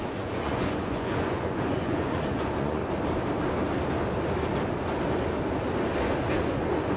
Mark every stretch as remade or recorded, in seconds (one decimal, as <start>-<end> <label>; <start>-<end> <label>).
0.0-2.8 remade; 2.8-6.3 recorded; 6.3-7.0 remade